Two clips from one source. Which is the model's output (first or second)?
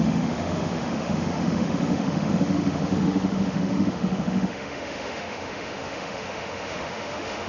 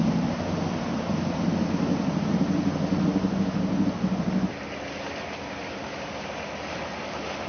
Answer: first